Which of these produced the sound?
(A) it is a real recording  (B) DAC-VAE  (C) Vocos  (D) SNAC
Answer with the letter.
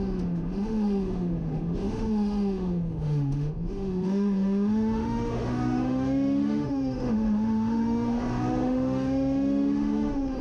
B